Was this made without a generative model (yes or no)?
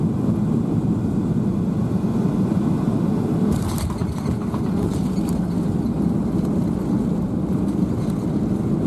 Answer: yes